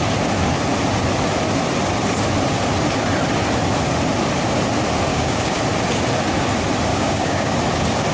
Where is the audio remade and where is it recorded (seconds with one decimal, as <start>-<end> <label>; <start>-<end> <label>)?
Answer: 0.0-5.1 recorded; 5.1-5.6 remade; 5.6-6.9 recorded; 6.9-7.5 remade; 7.5-8.1 recorded